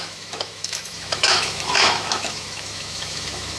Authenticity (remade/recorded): remade